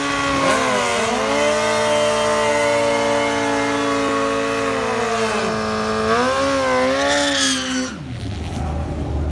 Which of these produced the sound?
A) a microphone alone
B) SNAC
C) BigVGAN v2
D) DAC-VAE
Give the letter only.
A